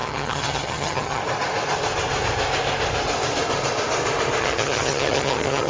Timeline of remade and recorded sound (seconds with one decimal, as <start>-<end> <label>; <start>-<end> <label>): 0.0-1.2 remade; 1.2-4.4 recorded; 4.4-5.7 remade